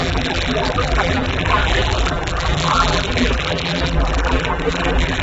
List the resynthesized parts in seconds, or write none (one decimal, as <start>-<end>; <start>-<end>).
0.0-5.2